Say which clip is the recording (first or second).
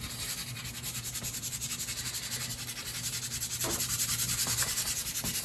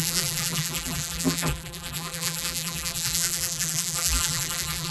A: first